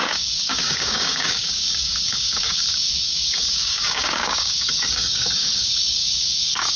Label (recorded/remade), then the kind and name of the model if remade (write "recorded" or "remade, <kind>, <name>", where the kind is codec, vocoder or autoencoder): remade, codec, DAC